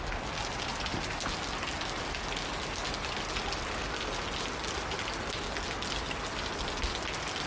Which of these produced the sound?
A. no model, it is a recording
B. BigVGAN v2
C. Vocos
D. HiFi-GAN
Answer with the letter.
A